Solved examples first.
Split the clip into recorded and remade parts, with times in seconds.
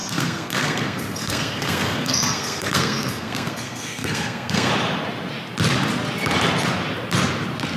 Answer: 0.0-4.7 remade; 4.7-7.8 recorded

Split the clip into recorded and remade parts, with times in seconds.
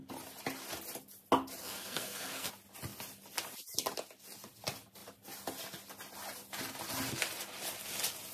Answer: 0.0-1.6 recorded; 1.6-2.5 remade; 2.5-8.3 recorded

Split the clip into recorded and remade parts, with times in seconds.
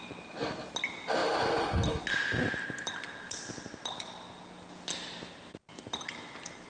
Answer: 0.0-6.7 recorded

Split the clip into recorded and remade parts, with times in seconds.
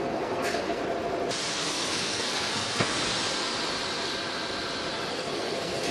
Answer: 0.0-0.8 remade; 0.8-1.5 recorded; 1.5-3.0 remade; 3.0-5.1 recorded; 5.1-5.9 remade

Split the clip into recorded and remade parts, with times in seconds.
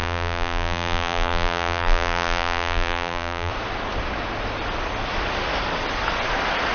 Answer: 0.0-3.5 remade; 3.5-6.7 recorded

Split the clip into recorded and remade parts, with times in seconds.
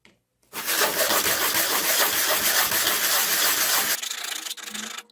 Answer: 0.0-5.1 recorded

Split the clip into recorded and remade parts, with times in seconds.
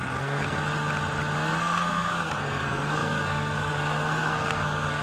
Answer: 0.0-0.6 remade; 0.6-1.6 recorded; 1.6-5.0 remade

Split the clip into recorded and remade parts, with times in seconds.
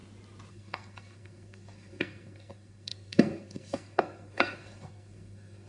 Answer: 0.0-0.5 recorded; 0.5-5.7 remade